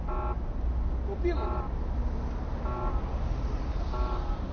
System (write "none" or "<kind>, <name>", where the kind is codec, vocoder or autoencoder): none